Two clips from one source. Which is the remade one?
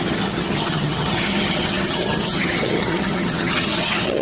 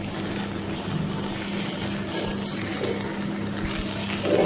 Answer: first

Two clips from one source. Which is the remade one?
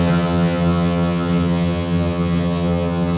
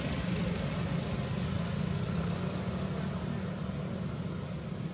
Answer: first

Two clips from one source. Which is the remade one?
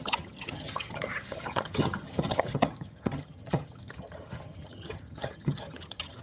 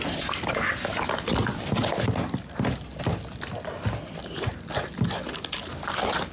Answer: first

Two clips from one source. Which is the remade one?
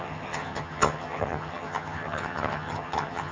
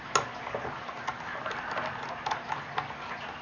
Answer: first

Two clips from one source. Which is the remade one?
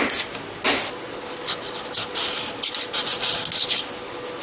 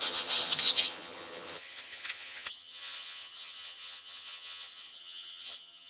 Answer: second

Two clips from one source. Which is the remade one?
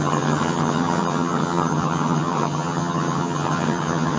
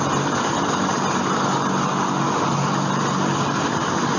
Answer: first